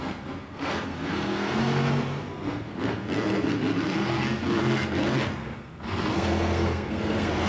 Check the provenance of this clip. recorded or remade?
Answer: remade